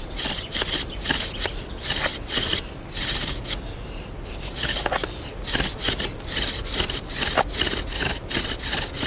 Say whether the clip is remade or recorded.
recorded